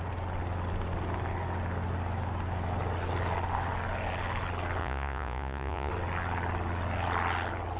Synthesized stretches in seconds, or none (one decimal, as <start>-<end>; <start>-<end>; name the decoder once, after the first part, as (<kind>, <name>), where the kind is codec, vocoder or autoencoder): 4.8-5.9 (vocoder, Vocos)